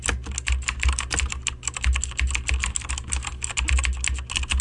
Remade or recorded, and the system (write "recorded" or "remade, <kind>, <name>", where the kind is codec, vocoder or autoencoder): recorded